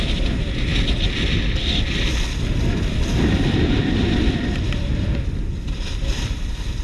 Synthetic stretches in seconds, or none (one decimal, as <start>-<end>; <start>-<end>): none